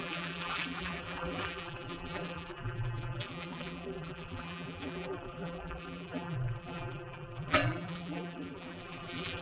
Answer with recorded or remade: remade